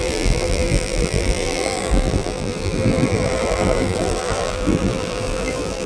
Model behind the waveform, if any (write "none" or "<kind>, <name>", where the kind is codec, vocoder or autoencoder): vocoder, BigVGAN v2